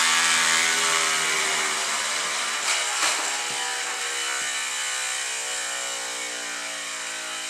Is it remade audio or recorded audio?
recorded